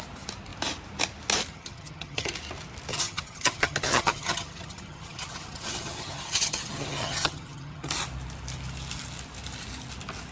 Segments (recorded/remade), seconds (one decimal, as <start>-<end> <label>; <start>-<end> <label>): 0.0-1.5 recorded; 1.5-2.3 remade; 2.3-2.9 recorded; 2.9-7.9 remade; 7.9-10.3 recorded